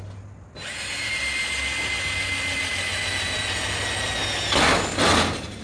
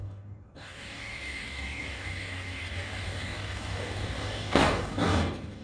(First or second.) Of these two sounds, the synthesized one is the second